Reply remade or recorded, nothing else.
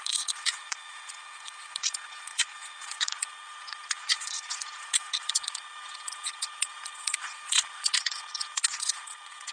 remade